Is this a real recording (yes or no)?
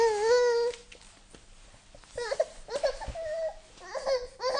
yes